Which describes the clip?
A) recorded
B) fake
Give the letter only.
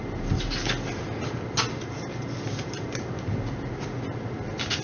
A